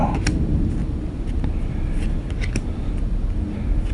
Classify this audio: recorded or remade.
recorded